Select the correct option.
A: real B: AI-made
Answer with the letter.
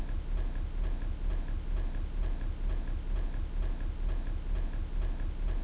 A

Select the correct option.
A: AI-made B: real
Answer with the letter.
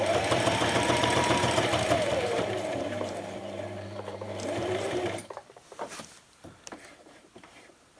A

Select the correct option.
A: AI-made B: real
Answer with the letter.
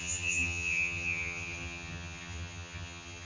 A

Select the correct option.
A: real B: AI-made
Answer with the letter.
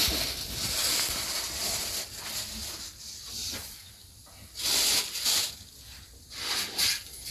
A